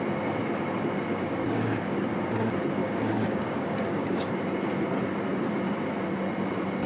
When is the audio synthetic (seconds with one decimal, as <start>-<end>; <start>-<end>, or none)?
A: 1.1-2.1; 2.8-4.3